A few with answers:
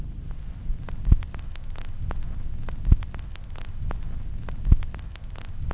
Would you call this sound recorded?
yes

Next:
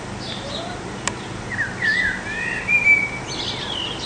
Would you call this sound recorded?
yes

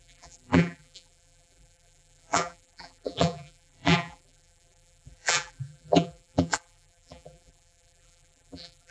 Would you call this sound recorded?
no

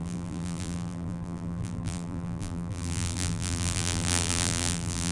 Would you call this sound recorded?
no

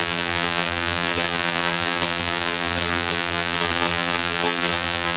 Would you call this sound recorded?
no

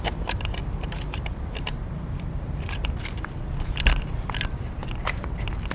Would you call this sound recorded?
no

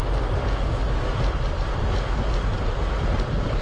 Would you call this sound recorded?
yes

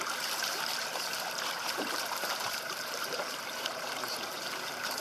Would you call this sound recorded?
no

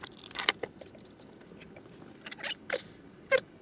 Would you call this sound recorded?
no